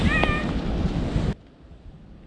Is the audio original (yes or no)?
yes